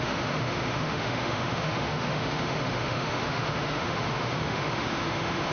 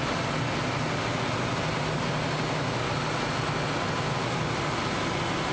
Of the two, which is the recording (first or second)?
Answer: second